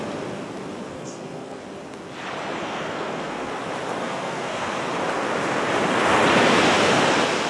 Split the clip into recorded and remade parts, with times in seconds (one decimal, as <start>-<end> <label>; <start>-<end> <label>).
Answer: 0.0-0.9 recorded; 0.9-1.6 remade; 1.6-2.6 recorded; 2.6-3.5 remade; 3.5-4.0 recorded; 4.0-4.7 remade; 4.7-7.5 recorded

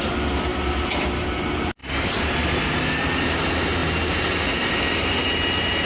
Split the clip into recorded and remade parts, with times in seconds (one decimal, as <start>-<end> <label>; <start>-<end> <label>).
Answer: 0.0-1.8 recorded; 1.8-3.4 remade; 3.4-5.9 recorded